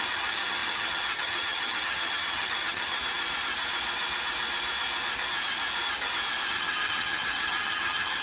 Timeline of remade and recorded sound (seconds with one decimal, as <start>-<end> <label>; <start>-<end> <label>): 0.0-3.0 remade; 3.0-6.5 recorded; 6.5-8.2 remade